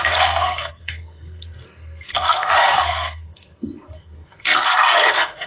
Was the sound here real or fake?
fake